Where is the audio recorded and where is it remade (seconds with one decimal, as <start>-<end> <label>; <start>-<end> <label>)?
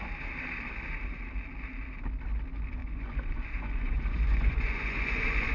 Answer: 0.0-2.8 recorded; 2.8-5.5 remade